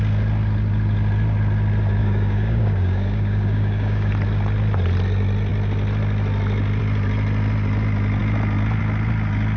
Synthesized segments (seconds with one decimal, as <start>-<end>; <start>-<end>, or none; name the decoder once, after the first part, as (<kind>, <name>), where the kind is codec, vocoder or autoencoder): 2.0-4.1 (codec, DAC)